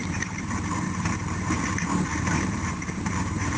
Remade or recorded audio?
remade